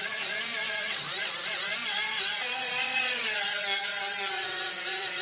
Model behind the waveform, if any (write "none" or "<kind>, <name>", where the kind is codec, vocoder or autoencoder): vocoder, Vocos